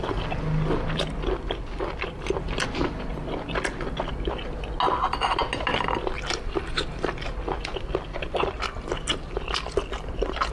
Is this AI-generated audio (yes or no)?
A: no